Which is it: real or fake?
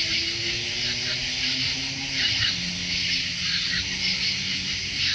real